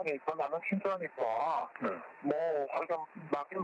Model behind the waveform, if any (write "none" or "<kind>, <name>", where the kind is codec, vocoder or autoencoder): none